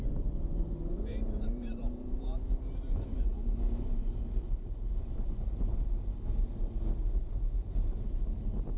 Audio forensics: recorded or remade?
remade